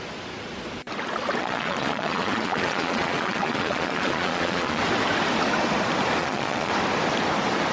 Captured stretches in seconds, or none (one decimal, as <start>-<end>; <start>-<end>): 0.0-1.4; 4.8-6.2; 6.7-7.7